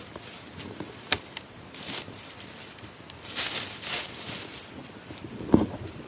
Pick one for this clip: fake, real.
fake